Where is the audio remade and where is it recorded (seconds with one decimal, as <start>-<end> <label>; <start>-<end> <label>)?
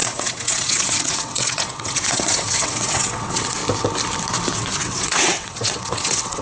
0.0-3.6 remade; 3.6-4.5 recorded; 4.5-6.4 remade